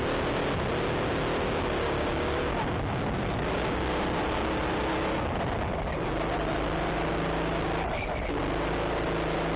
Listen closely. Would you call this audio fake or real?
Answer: real